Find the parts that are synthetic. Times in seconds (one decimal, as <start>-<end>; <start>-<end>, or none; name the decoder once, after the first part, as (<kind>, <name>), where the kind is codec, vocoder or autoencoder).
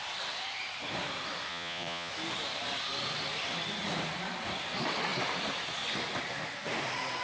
1.5-2.1 (vocoder, Vocos)